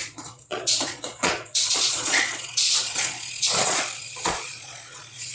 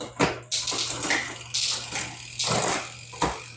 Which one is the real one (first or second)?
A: second